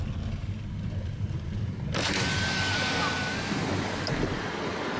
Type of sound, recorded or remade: recorded